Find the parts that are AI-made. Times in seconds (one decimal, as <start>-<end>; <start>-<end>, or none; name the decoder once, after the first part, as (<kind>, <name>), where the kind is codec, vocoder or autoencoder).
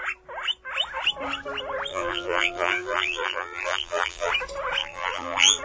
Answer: 1.9-4.3 (vocoder, BigVGAN v2); 4.8-5.6